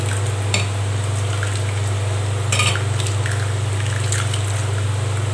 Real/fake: real